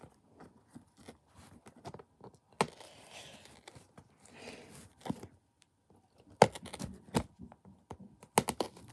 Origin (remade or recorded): recorded